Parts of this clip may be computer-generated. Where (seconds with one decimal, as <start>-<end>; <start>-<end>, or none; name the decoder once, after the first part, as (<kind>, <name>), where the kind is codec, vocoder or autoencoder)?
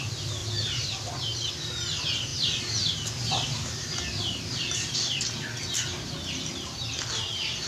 0.4-1.5 (vocoder, BigVGAN v2); 2.3-5.2